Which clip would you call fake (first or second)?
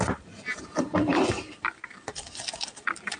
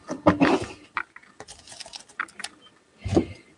first